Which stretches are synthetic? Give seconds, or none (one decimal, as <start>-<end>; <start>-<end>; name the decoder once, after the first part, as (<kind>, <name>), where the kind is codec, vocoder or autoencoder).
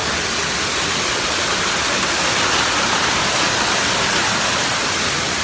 none